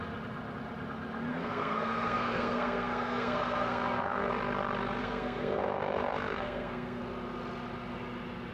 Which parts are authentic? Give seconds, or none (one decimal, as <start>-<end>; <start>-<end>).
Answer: 0.0-1.3; 4.3-5.0; 7.0-8.5